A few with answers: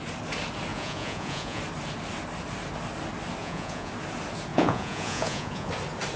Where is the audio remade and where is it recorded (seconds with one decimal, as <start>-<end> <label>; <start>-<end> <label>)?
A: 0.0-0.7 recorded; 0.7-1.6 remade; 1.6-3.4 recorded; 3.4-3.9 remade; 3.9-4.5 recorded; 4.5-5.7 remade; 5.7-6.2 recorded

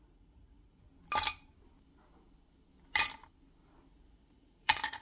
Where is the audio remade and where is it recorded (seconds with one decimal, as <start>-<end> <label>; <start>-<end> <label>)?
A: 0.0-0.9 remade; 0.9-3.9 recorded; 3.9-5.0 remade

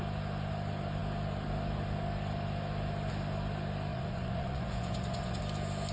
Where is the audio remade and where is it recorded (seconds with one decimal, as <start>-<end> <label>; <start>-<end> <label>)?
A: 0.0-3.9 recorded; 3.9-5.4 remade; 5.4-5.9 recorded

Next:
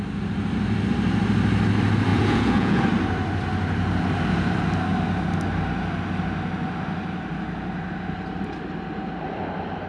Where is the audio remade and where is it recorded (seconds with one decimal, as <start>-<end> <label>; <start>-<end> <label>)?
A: 0.0-2.1 recorded; 2.1-2.8 remade; 2.8-9.9 recorded

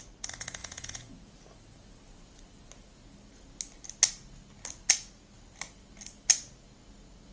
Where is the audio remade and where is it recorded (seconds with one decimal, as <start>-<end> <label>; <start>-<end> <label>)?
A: 0.0-0.6 recorded; 0.6-1.1 remade; 1.1-7.3 recorded